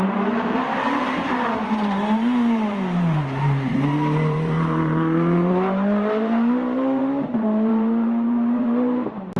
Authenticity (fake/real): fake